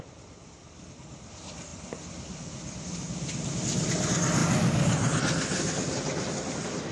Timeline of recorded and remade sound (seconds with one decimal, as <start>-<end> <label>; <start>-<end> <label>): 0.0-6.9 recorded